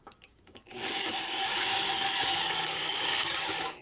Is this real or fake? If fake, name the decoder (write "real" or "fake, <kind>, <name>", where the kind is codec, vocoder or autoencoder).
fake, codec, DAC